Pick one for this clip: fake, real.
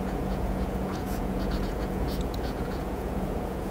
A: fake